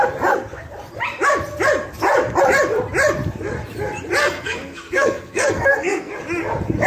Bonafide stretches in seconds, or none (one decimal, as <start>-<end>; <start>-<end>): 0.0-4.2; 6.1-6.9